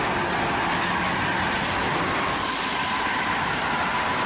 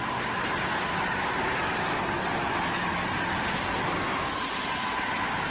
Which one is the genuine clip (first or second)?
second